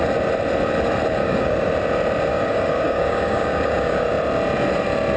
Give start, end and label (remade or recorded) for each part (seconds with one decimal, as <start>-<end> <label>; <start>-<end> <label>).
0.0-1.2 recorded; 1.2-1.7 remade; 1.7-2.3 recorded; 2.3-4.1 remade; 4.1-5.2 recorded